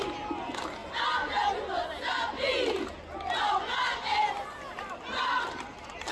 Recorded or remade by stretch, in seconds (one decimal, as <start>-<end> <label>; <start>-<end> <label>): 0.0-6.1 recorded